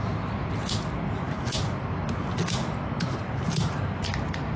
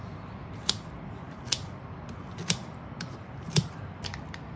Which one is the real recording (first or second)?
first